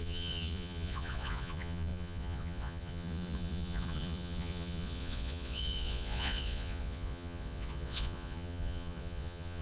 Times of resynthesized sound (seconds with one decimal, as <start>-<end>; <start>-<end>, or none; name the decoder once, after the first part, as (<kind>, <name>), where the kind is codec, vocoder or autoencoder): 0.0-9.6 (vocoder, Vocos)